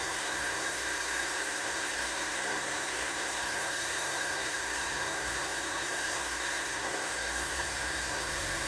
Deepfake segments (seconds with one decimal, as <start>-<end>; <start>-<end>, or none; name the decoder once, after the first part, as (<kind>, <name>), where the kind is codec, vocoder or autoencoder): 0.0-8.7 (codec, SNAC)